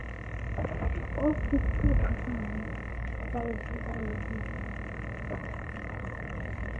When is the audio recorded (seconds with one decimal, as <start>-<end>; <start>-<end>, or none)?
0.0-2.9; 4.0-5.4

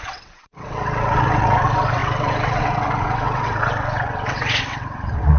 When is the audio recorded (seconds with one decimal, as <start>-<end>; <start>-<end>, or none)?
none

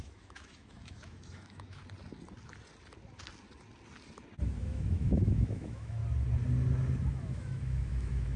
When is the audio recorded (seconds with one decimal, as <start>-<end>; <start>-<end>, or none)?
1.8-4.6; 6.0-7.1